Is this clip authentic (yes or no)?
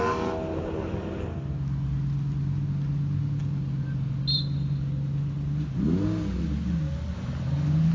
yes